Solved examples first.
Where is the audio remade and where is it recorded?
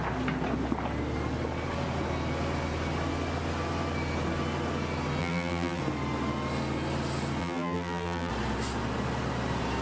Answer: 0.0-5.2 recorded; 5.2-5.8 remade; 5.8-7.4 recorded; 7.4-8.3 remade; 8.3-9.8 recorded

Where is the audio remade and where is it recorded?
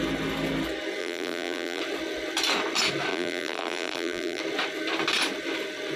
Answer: 0.0-1.0 recorded; 1.0-1.8 remade; 1.8-3.1 recorded; 3.1-4.4 remade; 4.4-6.0 recorded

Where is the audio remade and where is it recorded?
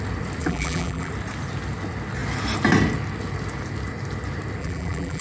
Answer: 0.0-0.4 recorded; 0.4-1.1 remade; 1.1-4.6 recorded; 4.6-5.2 remade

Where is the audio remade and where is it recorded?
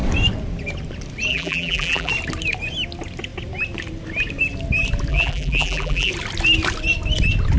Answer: 0.0-1.3 recorded; 1.3-2.1 remade; 2.1-5.1 recorded; 5.1-6.1 remade; 6.1-7.6 recorded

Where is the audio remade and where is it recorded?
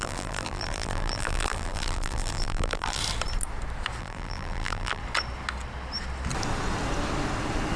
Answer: 0.0-3.0 remade; 3.0-4.0 recorded; 4.0-5.0 remade; 5.0-7.8 recorded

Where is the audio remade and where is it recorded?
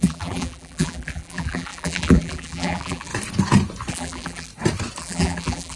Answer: 0.0-3.1 remade; 3.1-3.9 recorded; 3.9-4.5 remade; 4.5-5.0 recorded; 5.0-5.8 remade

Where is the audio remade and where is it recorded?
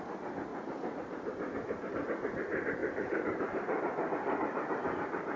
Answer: 0.0-0.5 recorded; 0.5-1.9 remade; 1.9-2.8 recorded; 2.8-5.4 remade